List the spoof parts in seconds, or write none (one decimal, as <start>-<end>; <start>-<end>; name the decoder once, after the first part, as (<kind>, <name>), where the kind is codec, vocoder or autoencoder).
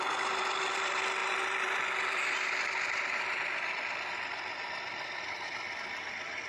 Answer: none